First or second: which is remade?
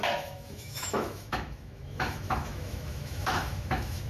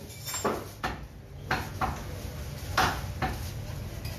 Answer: first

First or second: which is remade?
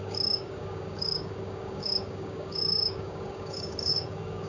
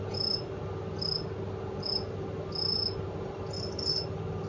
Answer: first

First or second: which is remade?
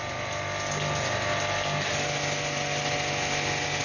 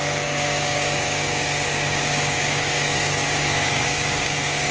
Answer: second